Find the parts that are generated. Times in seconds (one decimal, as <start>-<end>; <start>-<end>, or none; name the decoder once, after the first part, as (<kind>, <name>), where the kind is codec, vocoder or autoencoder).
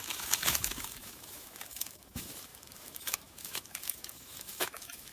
0.0-5.1 (autoencoder, DAC-VAE)